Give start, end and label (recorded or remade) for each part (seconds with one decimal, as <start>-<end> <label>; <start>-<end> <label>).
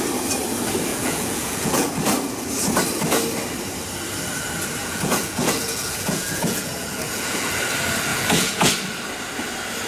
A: 0.0-0.9 recorded; 0.9-1.9 remade; 1.9-4.8 recorded; 4.8-7.6 remade; 7.6-8.1 recorded; 8.1-8.7 remade; 8.7-9.9 recorded